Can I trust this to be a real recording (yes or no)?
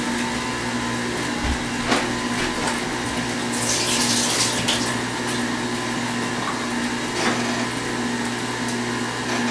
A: yes